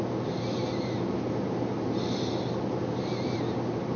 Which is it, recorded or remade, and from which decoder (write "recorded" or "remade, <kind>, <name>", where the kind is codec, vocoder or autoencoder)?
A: recorded